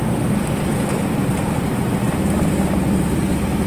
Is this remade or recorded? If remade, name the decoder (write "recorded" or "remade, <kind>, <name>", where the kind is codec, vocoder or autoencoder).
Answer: recorded